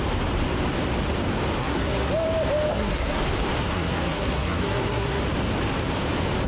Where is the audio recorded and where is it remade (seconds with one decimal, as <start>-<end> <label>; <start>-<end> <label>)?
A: 0.0-1.6 recorded; 1.6-2.1 remade; 2.1-2.7 recorded; 2.7-3.2 remade; 3.2-3.6 recorded; 3.6-5.2 remade; 5.2-6.5 recorded